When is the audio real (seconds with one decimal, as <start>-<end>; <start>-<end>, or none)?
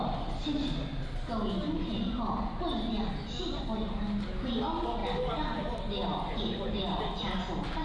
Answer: 0.0-7.8